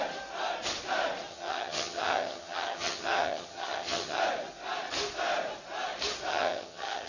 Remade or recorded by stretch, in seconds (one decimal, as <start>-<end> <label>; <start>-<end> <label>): 0.0-1.3 recorded; 1.3-4.2 remade; 4.2-6.3 recorded; 6.3-7.1 remade